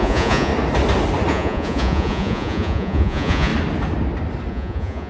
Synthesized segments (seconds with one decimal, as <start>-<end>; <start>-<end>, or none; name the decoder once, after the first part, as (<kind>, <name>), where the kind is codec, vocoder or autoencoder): 0.0-0.5 (vocoder, Vocos); 1.3-3.5; 4.5-5.1